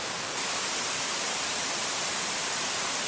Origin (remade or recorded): remade